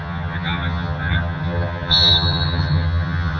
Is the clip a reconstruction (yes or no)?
yes